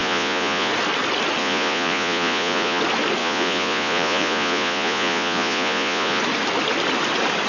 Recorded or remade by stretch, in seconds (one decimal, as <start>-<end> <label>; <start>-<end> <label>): 0.0-0.7 remade; 0.7-1.4 recorded; 1.4-2.8 remade; 2.8-3.2 recorded; 3.2-6.2 remade; 6.2-7.5 recorded